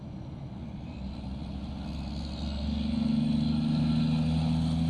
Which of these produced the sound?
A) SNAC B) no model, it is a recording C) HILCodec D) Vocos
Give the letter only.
B